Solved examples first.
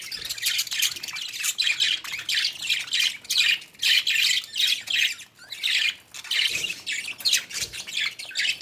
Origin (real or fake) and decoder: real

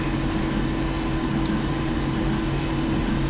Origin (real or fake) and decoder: real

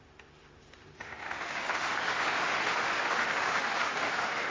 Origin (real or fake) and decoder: fake, autoencoder, DAC-VAE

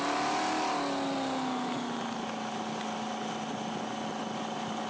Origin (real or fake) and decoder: real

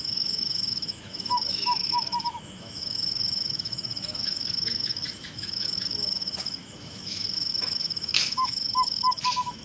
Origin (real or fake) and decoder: fake, autoencoder, DAC-VAE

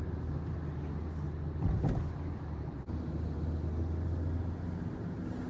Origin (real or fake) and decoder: real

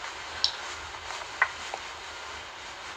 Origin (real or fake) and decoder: real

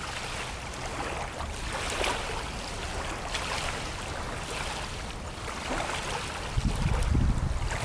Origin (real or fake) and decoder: real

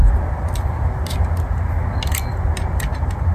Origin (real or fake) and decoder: real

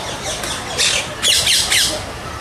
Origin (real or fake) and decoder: real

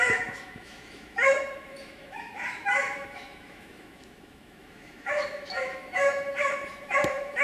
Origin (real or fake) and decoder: fake, autoencoder, DAC-VAE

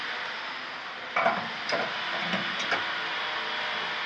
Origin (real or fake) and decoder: real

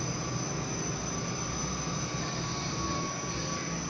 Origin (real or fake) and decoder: real